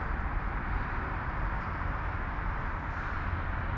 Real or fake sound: real